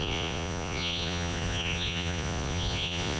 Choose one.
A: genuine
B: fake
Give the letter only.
B